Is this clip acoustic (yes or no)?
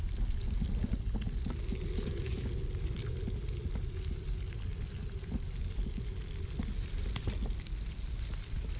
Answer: yes